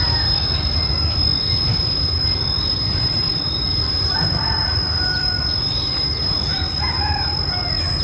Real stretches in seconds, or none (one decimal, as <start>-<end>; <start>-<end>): 0.0-1.7; 6.1-6.5; 7.5-8.0

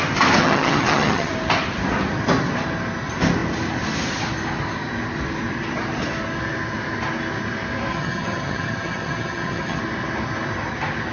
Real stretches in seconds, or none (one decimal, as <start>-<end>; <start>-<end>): 0.0-0.4; 1.3-7.9; 9.8-11.1

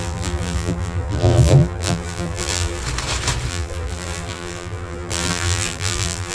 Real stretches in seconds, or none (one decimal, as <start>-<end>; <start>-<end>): 2.8-3.5

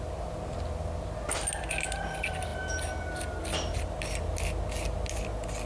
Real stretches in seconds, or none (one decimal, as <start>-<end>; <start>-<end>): 0.0-5.7